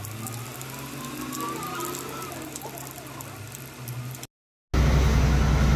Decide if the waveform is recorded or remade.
recorded